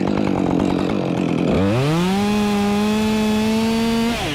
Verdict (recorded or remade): recorded